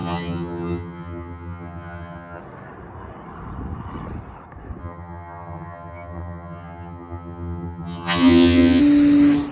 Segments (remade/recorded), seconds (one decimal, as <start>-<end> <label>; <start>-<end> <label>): 0.0-2.4 remade; 2.4-4.8 recorded; 4.8-8.8 remade; 8.8-9.5 recorded